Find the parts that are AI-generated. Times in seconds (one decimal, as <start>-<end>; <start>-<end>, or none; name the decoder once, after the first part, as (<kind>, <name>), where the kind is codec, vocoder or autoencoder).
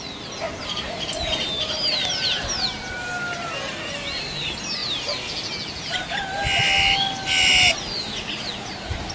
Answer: none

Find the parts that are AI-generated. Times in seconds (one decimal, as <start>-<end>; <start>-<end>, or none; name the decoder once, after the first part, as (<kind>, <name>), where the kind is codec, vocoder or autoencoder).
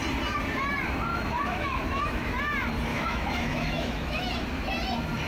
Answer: 1.1-2.4 (autoencoder, DAC-VAE); 2.9-4.3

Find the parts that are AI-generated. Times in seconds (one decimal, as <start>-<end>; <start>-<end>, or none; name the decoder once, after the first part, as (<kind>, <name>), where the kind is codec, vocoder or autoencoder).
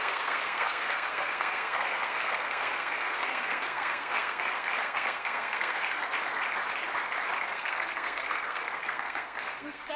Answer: 0.0-6.0 (codec, SNAC); 7.4-10.0